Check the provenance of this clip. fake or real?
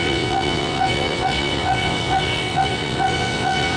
fake